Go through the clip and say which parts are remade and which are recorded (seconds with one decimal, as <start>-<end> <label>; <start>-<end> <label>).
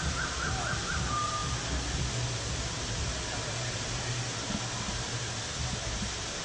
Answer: 0.0-6.4 recorded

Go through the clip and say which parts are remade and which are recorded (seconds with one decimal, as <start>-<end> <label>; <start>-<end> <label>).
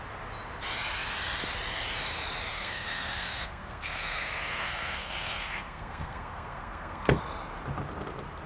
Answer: 0.0-2.5 recorded; 2.5-7.2 remade; 7.2-8.5 recorded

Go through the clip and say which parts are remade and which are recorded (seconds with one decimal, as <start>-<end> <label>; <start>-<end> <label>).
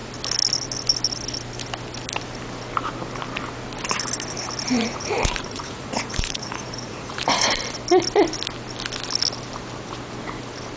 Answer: 0.0-4.7 recorded; 4.7-7.5 remade; 7.5-10.8 recorded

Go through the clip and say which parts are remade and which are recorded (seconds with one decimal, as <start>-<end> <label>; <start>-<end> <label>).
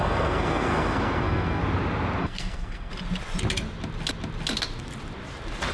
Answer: 0.0-1.6 remade; 1.6-2.2 recorded; 2.2-2.9 remade; 2.9-5.7 recorded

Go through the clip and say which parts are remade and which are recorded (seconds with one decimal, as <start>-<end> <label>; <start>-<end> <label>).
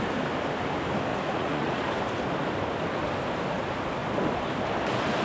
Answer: 0.0-1.1 recorded; 1.1-1.8 remade; 1.8-5.2 recorded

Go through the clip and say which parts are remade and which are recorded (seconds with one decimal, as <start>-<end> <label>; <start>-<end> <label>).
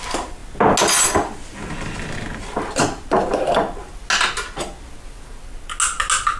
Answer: 0.0-6.4 recorded